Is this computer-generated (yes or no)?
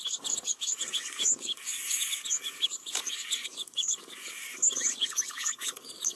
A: yes